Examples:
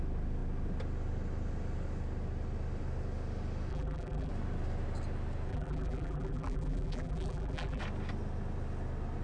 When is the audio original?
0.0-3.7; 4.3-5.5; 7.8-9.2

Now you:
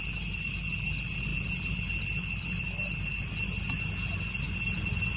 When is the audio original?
0.0-5.2